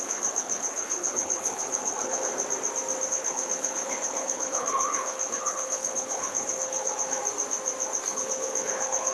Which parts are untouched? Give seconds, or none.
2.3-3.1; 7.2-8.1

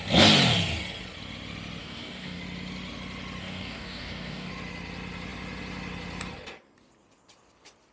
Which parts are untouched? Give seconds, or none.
0.0-1.8; 2.4-3.4; 4.5-7.9

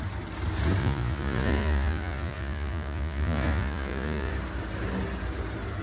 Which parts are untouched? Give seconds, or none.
0.0-0.8; 4.3-5.8

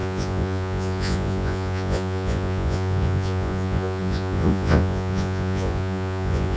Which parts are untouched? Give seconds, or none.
none

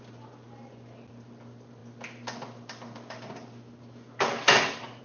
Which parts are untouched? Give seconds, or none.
0.0-5.0

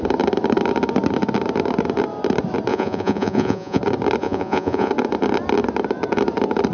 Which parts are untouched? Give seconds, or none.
0.0-2.7; 3.8-4.2; 4.9-6.7